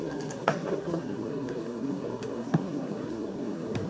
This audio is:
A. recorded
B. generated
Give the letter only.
B